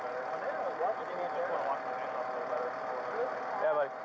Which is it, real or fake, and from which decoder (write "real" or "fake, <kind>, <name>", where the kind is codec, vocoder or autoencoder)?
real